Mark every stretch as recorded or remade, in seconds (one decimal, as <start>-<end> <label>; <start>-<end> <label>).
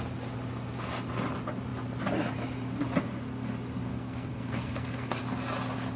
0.0-3.9 recorded; 3.9-5.2 remade; 5.2-6.0 recorded